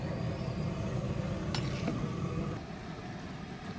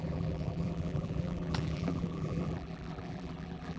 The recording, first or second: first